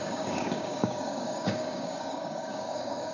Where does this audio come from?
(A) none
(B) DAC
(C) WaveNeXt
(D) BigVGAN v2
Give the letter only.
B